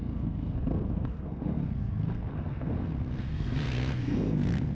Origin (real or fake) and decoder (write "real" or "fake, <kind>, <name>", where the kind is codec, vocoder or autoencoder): fake, codec, SNAC